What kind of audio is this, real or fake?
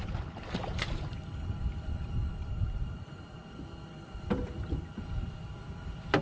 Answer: real